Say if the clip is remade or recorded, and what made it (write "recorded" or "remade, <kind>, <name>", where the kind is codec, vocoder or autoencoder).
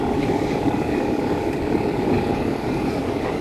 remade, codec, DAC